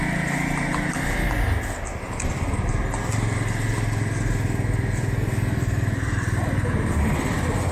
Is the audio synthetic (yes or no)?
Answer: no